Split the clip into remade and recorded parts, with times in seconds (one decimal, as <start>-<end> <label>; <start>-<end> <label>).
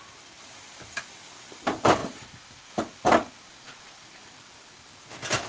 0.0-2.0 recorded; 2.0-2.7 remade; 2.7-3.5 recorded; 3.5-4.2 remade; 4.2-5.5 recorded